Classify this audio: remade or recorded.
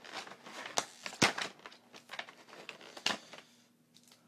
recorded